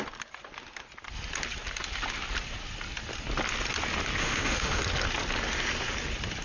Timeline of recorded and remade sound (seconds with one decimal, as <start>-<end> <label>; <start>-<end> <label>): 0.0-4.2 recorded; 4.2-4.8 remade; 4.8-6.4 recorded

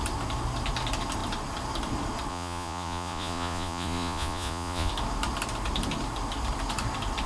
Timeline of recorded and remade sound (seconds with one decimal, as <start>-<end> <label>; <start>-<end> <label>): 0.0-2.3 recorded; 2.3-4.9 remade; 4.9-7.3 recorded

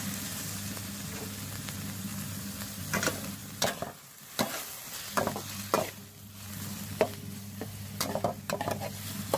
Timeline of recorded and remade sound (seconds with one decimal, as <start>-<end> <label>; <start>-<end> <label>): 0.0-2.1 recorded; 2.1-2.8 remade; 2.8-9.4 recorded

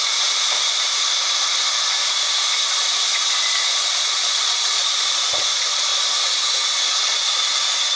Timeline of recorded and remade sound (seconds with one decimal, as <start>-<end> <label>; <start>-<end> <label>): 0.0-4.3 recorded; 4.3-5.9 remade; 5.9-6.9 recorded; 6.9-8.0 remade

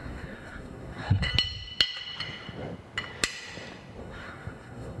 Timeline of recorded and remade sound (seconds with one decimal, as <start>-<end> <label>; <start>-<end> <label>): 0.0-1.3 remade; 1.3-4.0 recorded; 4.0-5.0 remade